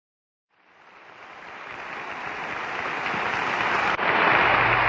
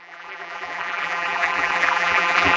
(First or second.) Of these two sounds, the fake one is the second